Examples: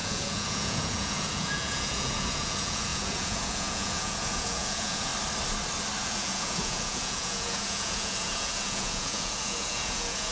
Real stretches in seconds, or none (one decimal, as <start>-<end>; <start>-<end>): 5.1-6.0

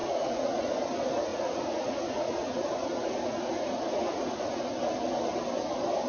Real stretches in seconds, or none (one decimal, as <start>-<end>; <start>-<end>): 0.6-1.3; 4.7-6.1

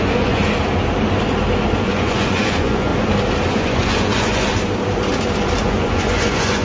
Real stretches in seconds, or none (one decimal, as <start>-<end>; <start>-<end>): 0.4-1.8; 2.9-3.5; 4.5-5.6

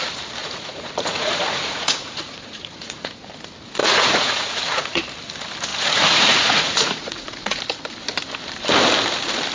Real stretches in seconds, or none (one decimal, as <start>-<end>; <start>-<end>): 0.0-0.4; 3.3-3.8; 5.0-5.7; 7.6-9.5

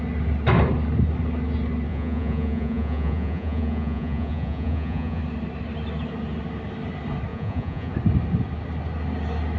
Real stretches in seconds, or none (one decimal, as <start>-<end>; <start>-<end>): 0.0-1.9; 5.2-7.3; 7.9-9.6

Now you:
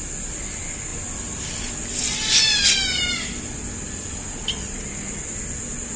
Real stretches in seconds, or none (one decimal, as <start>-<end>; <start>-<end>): 0.0-6.0